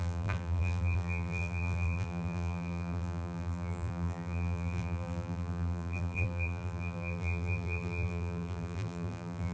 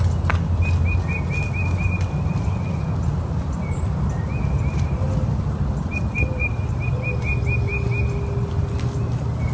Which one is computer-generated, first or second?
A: first